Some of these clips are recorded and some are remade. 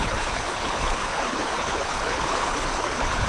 remade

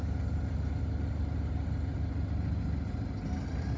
recorded